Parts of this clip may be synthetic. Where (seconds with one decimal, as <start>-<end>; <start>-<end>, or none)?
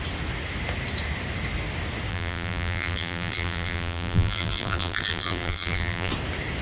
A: 2.1-6.1